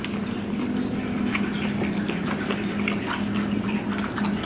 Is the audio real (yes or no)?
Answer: yes